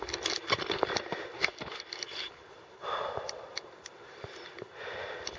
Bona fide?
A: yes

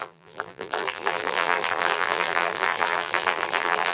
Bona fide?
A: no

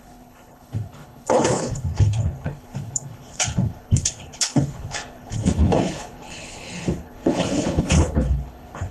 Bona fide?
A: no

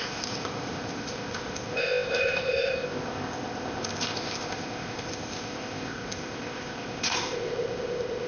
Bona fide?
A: no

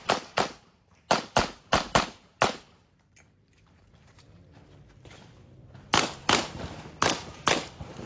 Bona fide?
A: no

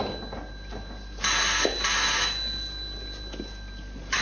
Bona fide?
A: yes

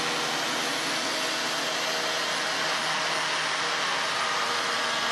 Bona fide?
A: yes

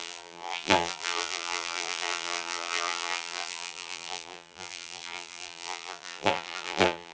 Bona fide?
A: no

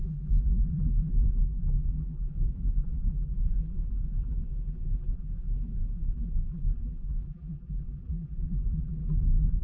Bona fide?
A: no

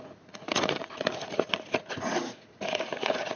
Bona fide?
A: no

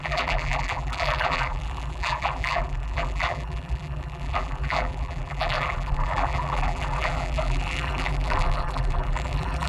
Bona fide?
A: no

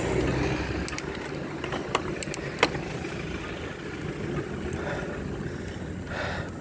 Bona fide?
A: yes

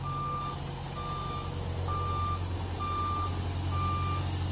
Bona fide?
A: yes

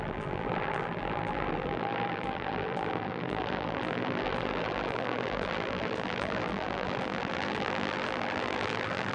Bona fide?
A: no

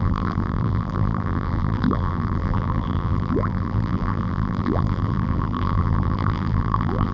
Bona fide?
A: no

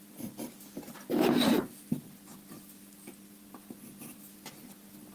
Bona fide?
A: yes